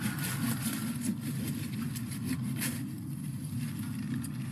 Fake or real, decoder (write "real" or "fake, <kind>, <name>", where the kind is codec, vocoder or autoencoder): real